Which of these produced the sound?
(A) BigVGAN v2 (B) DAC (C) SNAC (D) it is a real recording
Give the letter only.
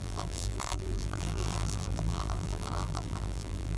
A